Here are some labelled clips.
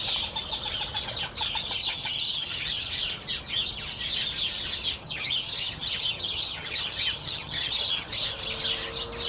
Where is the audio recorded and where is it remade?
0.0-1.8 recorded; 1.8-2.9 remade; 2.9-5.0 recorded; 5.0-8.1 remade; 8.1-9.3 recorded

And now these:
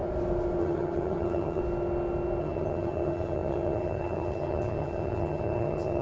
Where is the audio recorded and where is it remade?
0.0-0.6 recorded; 0.6-1.6 remade; 1.6-2.4 recorded; 2.4-6.0 remade

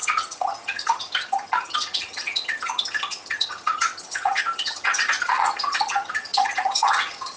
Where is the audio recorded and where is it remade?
0.0-7.4 remade

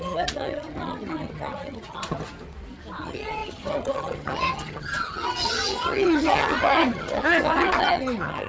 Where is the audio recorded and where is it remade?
0.0-2.3 remade; 2.3-3.0 recorded; 3.0-8.5 remade

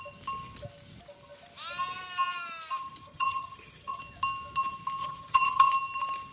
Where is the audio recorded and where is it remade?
0.0-3.0 recorded; 3.0-4.0 remade; 4.0-5.0 recorded; 5.0-5.7 remade; 5.7-6.3 recorded